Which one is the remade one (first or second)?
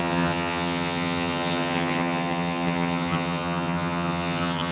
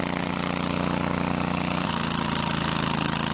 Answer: first